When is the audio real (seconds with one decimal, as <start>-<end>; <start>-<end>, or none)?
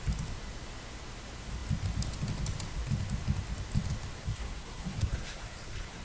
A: 0.0-4.2